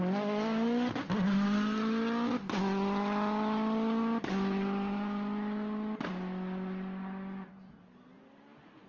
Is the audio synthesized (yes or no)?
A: no